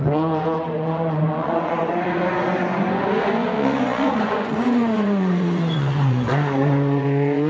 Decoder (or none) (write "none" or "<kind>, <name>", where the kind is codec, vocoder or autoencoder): vocoder, Vocos